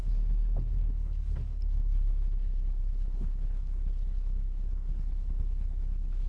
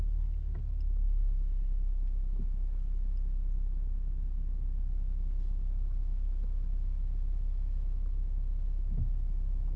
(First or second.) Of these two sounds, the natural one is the second